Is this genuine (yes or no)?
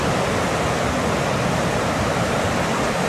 yes